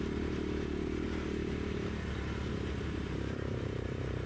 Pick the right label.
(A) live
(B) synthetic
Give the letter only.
B